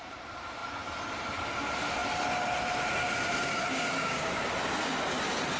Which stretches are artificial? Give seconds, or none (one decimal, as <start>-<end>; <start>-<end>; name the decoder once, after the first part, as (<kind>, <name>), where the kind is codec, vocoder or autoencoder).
3.7-4.5 (codec, DAC)